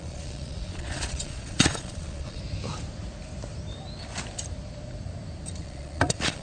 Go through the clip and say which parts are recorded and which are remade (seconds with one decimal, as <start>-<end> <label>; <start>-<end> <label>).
0.0-2.4 remade; 2.4-5.6 recorded; 5.6-6.4 remade